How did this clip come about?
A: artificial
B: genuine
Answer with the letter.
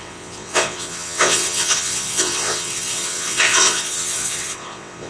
A